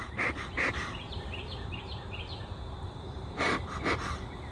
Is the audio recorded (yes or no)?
no